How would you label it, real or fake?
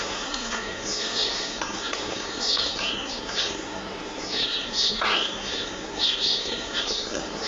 fake